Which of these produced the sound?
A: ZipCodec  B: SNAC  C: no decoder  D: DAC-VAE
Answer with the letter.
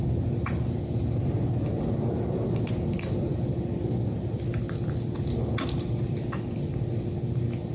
C